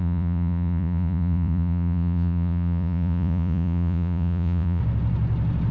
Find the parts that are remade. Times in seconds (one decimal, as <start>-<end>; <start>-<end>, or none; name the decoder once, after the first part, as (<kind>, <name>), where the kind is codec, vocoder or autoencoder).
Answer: 0.0-4.8 (vocoder, Vocos)